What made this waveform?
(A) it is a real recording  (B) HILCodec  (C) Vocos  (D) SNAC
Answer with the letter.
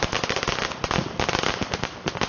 A